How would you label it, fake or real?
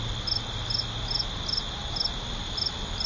real